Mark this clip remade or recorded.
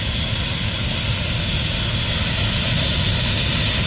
recorded